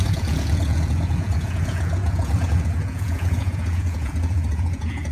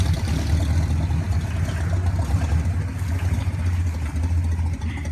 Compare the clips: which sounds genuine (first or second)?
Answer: second